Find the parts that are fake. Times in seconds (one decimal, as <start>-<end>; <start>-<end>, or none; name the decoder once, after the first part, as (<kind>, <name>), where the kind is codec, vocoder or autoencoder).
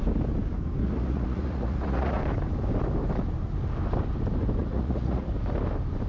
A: 0.8-2.2 (vocoder, Vocos); 4.6-5.3